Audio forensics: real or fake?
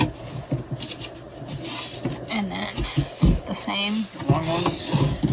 real